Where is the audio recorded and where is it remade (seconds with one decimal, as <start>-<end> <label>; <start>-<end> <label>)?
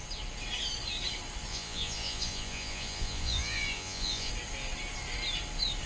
0.0-1.5 recorded; 1.5-4.3 remade; 4.3-5.9 recorded